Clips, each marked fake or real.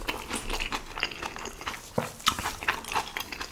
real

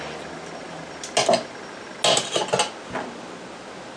real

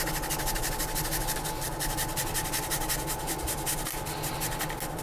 real